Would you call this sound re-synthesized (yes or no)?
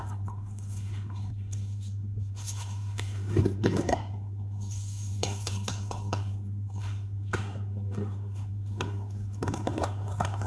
yes